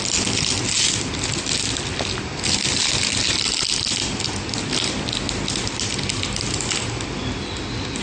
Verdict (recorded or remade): recorded